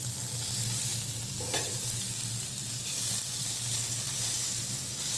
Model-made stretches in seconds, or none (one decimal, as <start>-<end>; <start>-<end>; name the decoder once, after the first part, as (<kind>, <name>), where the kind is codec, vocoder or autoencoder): 3.4-4.0 (codec, HILCodec)